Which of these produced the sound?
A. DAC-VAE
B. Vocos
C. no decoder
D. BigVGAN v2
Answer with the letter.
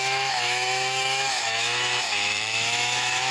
A